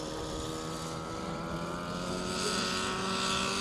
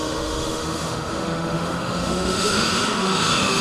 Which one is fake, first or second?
second